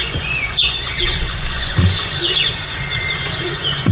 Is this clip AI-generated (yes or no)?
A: yes